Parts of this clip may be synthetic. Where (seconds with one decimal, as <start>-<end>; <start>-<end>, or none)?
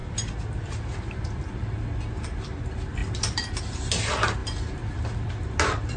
3.0-3.6